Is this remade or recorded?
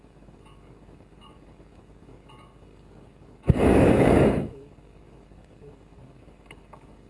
remade